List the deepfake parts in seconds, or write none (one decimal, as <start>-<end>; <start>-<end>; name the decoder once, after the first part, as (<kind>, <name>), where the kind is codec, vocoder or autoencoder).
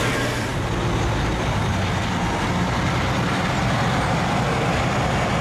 none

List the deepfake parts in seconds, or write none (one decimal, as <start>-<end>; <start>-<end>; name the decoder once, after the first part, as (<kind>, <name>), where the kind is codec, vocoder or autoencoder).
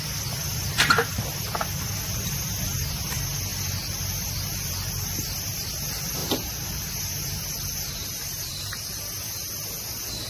6.2-7.3 (vocoder, BigVGAN v2); 8.0-9.0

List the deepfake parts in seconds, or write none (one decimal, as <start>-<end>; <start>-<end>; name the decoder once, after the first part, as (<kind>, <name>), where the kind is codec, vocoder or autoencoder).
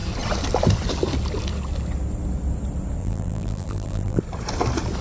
3.0-4.2 (vocoder, BigVGAN v2)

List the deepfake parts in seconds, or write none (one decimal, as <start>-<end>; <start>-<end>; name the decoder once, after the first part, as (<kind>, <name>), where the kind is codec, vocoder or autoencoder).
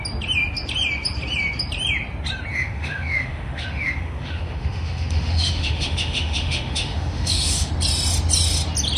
2.5-7.7 (autoencoder, DAC-VAE)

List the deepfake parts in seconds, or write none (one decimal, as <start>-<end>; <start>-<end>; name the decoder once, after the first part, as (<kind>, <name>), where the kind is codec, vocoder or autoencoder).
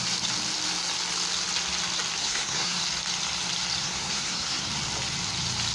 2.2-2.8 (codec, SNAC); 3.8-4.7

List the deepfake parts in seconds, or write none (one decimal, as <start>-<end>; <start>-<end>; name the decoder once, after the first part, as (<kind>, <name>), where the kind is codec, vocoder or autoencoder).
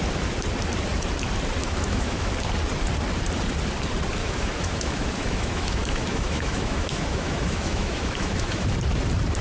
1.6-2.3 (autoencoder, DAC-VAE); 4.2-8.7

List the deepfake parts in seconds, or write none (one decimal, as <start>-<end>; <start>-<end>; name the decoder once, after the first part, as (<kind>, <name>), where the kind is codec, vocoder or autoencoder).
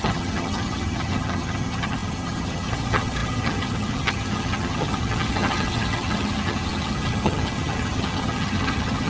0.0-9.1 (vocoder, HiFi-GAN)